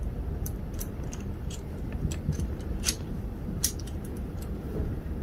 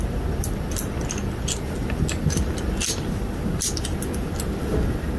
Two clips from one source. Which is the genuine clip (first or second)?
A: second